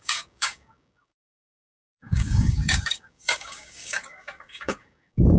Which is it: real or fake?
fake